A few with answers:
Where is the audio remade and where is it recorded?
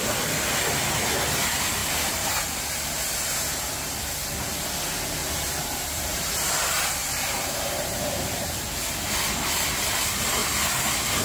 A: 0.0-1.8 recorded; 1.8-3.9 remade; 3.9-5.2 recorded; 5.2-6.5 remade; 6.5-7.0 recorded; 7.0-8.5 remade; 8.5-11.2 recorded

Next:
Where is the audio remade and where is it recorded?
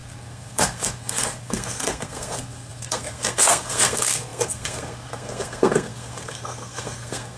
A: 0.0-7.4 remade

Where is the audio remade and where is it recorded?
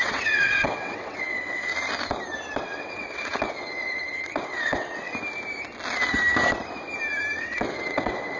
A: 0.0-1.7 remade; 1.7-2.6 recorded; 2.6-5.1 remade; 5.1-7.4 recorded; 7.4-8.4 remade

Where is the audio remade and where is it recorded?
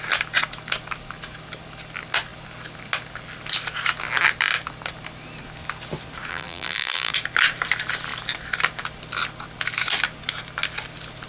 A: 0.0-6.3 recorded; 6.3-7.1 remade; 7.1-11.3 recorded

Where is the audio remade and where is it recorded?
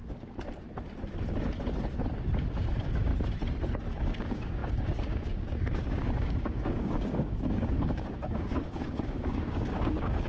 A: 0.0-2.6 recorded; 2.6-3.1 remade; 3.1-3.9 recorded; 3.9-10.3 remade